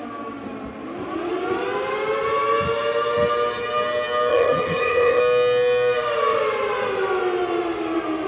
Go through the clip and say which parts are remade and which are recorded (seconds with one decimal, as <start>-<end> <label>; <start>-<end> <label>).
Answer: 0.0-4.3 recorded; 4.3-5.2 remade; 5.2-8.3 recorded